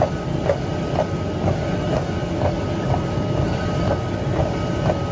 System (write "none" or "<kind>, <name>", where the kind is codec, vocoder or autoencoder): none